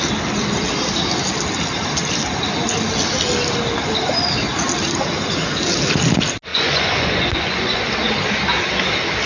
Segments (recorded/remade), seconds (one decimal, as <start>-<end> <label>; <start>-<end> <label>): 0.0-6.5 recorded; 6.5-7.9 remade; 7.9-9.3 recorded